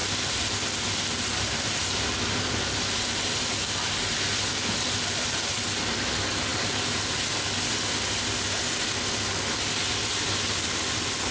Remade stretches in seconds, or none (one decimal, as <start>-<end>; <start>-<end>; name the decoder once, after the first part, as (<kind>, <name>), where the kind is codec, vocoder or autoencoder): none